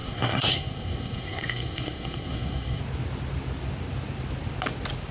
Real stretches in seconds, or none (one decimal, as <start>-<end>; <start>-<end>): 2.8-5.1